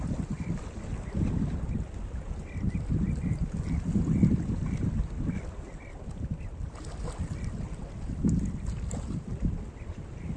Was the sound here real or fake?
real